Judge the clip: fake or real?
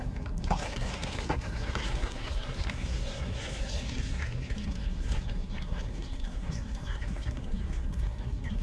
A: fake